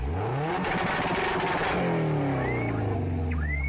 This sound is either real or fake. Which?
real